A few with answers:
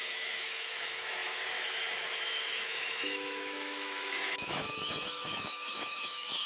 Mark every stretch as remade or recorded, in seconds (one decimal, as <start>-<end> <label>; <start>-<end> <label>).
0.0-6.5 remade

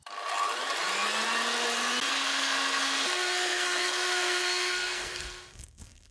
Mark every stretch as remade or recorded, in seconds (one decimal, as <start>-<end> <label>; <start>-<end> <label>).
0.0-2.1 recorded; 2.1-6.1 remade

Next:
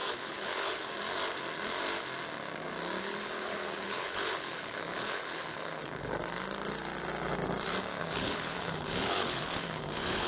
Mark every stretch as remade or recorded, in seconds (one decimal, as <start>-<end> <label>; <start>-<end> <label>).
0.0-0.9 remade; 0.9-3.0 recorded; 3.0-6.0 remade; 6.0-8.0 recorded; 8.0-10.3 remade

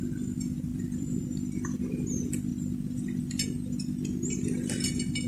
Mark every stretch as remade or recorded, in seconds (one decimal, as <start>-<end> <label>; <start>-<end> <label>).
0.0-0.7 recorded; 0.7-1.2 remade; 1.2-5.3 recorded

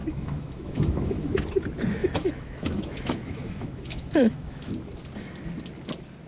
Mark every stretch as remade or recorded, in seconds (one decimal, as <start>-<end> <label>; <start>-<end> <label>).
0.0-1.4 remade; 1.4-2.0 recorded; 2.0-4.7 remade; 4.7-6.3 recorded

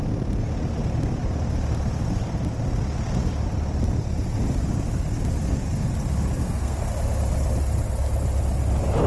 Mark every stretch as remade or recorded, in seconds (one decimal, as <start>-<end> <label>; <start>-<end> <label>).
0.0-6.4 recorded; 6.4-6.9 remade; 6.9-9.1 recorded